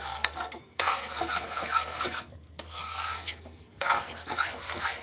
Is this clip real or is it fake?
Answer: fake